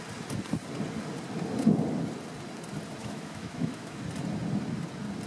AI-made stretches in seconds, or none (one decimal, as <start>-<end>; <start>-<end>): 3.0-4.0